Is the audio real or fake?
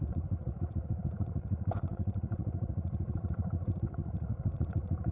fake